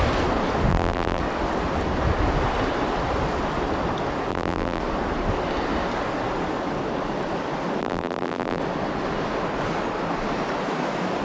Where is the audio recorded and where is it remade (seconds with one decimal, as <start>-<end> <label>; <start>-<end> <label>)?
0.0-0.7 recorded; 0.7-1.2 remade; 1.2-4.3 recorded; 4.3-4.8 remade; 4.8-7.8 recorded; 7.8-8.6 remade; 8.6-11.2 recorded